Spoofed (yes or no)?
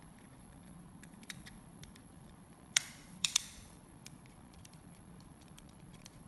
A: yes